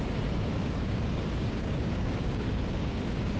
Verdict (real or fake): fake